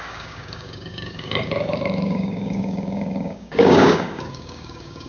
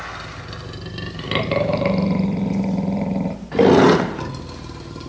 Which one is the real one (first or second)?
second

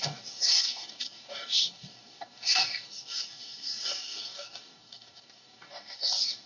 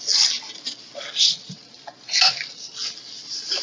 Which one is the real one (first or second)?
second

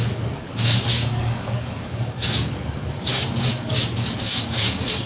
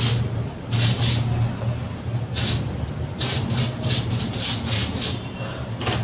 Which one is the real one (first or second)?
second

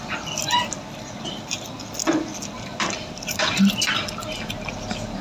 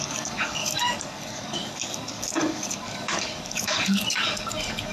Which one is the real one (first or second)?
first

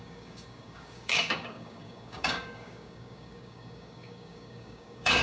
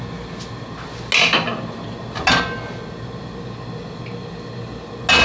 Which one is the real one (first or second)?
second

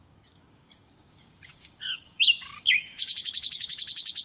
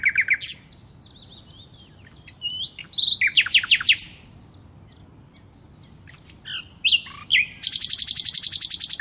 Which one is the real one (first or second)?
second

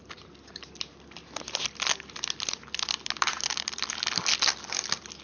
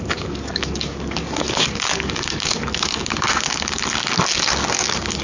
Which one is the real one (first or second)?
first